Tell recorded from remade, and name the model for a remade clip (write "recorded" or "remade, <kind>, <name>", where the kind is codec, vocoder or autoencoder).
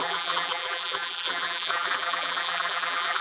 remade, vocoder, BigVGAN v2